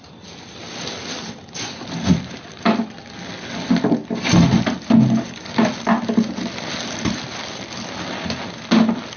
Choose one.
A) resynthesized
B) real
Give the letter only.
B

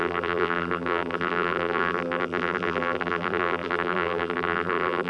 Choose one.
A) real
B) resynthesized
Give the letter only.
B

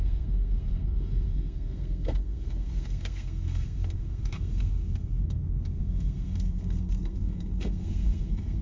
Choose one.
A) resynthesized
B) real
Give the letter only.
A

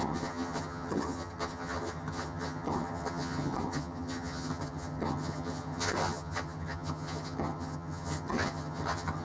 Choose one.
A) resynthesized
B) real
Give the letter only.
A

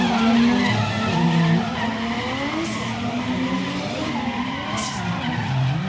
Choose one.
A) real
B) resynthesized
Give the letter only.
A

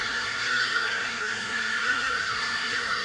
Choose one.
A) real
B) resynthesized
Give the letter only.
B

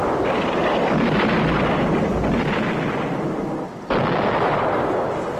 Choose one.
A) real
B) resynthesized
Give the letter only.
A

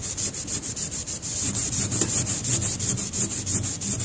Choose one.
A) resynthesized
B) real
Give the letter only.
A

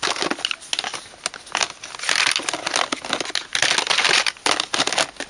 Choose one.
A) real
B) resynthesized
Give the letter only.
A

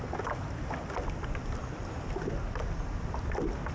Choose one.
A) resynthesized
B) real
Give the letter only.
B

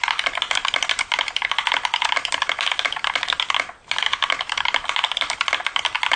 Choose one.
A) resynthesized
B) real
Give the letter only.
B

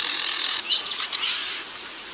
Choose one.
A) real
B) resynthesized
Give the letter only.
B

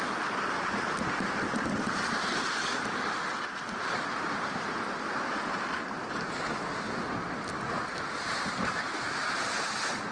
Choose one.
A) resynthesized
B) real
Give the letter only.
B